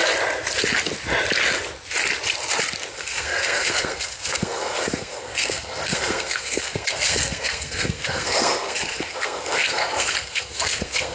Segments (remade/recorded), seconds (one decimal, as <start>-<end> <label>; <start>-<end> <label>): 0.0-2.9 recorded; 2.9-11.1 remade